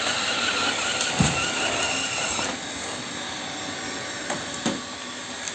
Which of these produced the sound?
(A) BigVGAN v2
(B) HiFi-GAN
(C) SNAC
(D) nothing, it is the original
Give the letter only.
D